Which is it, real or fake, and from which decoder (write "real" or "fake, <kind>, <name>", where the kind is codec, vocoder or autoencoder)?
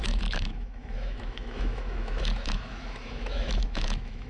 fake, autoencoder, DAC-VAE